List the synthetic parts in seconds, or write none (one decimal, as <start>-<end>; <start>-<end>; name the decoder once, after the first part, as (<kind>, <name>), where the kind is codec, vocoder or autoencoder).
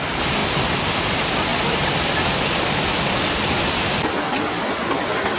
0.4-0.9 (vocoder, BigVGAN v2); 1.5-4.7